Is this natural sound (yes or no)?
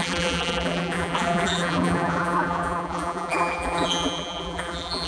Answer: no